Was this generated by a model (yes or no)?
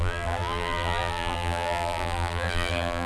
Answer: yes